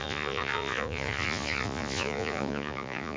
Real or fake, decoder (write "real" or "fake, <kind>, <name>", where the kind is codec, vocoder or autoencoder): fake, vocoder, Vocos